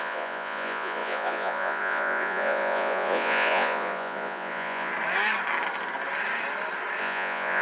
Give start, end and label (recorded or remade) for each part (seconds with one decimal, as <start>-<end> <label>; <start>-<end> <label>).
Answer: 0.0-4.9 remade; 4.9-7.0 recorded; 7.0-7.6 remade

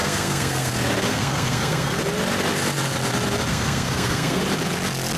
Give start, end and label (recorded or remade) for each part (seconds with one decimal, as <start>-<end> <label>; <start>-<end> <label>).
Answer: 0.0-0.7 remade; 0.7-1.1 recorded; 1.1-2.0 remade; 2.0-3.5 recorded; 3.5-4.4 remade; 4.4-5.2 recorded

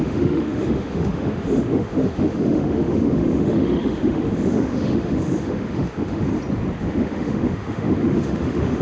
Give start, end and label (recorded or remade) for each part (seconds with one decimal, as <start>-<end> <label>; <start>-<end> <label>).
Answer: 0.0-6.3 remade; 6.3-6.8 recorded; 6.8-8.8 remade

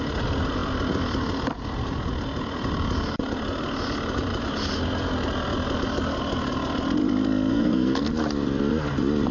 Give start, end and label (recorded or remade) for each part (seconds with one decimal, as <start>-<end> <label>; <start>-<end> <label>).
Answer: 0.0-7.5 recorded; 7.5-8.1 remade; 8.1-9.3 recorded

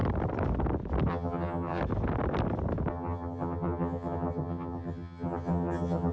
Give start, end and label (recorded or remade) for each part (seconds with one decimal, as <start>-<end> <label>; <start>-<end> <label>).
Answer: 0.0-1.1 recorded; 1.1-1.8 remade; 1.8-2.9 recorded; 2.9-6.1 remade

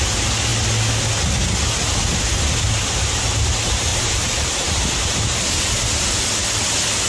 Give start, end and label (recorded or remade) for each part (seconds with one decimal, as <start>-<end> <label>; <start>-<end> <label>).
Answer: 0.0-3.9 recorded; 3.9-5.6 remade; 5.6-7.1 recorded